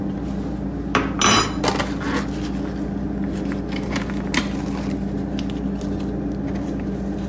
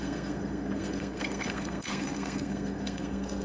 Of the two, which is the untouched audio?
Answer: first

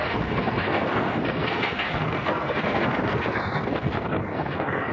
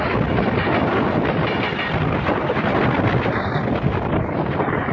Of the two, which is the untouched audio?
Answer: second